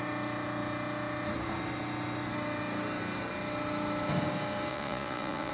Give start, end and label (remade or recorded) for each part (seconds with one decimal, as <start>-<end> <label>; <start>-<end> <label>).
0.0-4.7 recorded; 4.7-5.5 remade

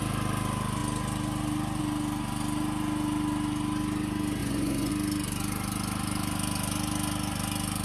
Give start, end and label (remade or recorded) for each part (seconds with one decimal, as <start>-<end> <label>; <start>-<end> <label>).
0.0-4.4 recorded; 4.4-4.9 remade; 4.9-7.8 recorded

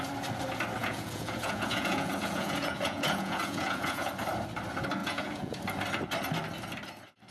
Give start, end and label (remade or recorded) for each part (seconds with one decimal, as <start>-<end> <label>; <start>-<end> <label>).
0.0-0.8 recorded; 0.8-4.1 remade; 4.1-5.0 recorded; 5.0-5.5 remade; 5.5-7.3 recorded

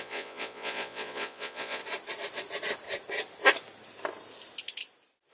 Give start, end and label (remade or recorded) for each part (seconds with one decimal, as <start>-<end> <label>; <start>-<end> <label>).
0.0-1.8 remade; 1.8-5.3 recorded

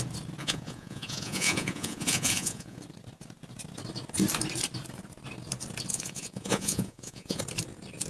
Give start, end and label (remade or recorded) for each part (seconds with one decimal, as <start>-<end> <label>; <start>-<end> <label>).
0.0-0.4 recorded; 0.4-2.8 remade; 2.8-5.9 recorded; 5.9-7.4 remade; 7.4-8.1 recorded